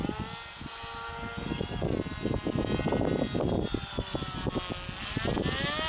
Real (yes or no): yes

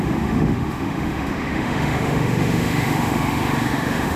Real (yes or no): no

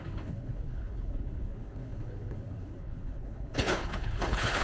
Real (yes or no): no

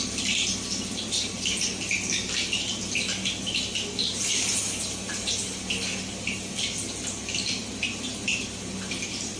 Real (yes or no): yes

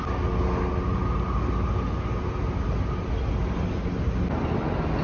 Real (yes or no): yes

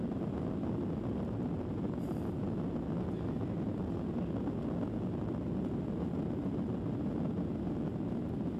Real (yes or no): yes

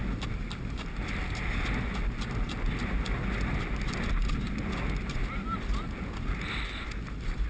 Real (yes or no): yes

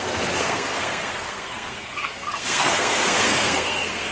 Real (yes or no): no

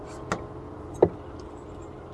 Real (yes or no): yes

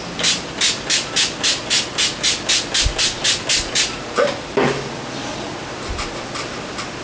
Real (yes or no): yes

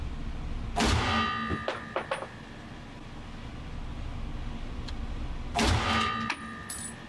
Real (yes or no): yes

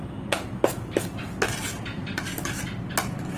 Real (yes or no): yes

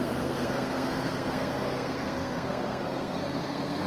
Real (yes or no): no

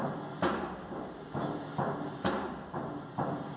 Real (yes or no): yes